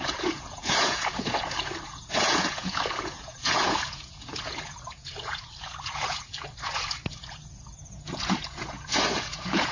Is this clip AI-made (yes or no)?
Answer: yes